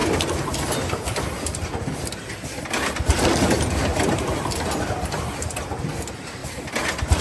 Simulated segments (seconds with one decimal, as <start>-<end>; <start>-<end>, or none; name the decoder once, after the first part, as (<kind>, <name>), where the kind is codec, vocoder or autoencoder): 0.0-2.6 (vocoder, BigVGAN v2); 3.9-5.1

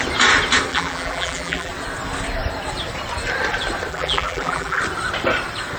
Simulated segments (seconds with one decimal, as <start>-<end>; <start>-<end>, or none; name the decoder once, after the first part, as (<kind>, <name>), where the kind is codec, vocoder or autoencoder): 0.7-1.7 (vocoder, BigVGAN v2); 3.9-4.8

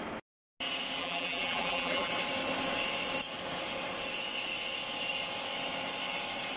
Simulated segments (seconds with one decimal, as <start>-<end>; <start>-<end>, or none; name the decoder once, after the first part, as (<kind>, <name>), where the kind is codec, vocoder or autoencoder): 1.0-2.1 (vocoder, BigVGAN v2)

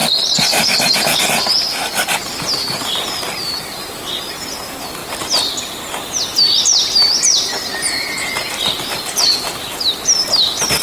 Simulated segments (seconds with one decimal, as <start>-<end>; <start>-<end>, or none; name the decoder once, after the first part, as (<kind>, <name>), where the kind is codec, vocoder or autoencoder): 0.0-4.2 (vocoder, BigVGAN v2)

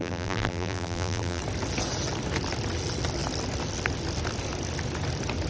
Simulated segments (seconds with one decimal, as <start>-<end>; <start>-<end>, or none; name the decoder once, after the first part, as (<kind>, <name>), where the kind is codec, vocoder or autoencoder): 0.0-1.4 (vocoder, BigVGAN v2)